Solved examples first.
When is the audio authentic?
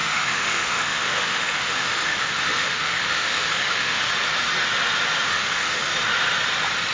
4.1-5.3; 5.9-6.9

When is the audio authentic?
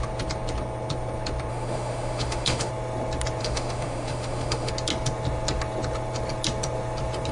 0.0-1.5; 2.7-3.4; 4.7-7.3